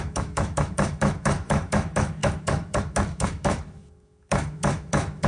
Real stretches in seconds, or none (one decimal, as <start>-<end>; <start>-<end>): none